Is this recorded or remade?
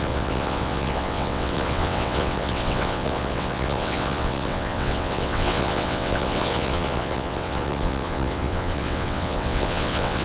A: remade